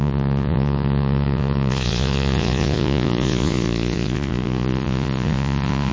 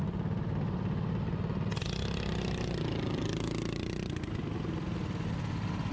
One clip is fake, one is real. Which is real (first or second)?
second